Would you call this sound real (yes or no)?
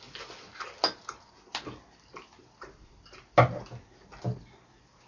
yes